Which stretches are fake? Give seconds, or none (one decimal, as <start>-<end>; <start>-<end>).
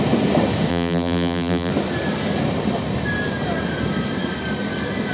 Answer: 0.7-1.7